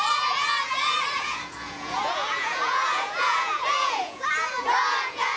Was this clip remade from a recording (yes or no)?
yes